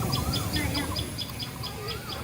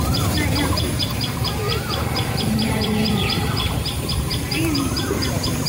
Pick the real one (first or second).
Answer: first